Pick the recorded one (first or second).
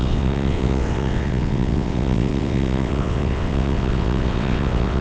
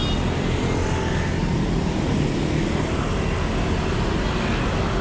second